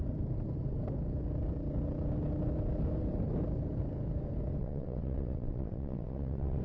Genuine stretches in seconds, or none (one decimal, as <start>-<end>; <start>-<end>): 0.0-4.6